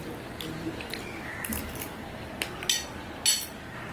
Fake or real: real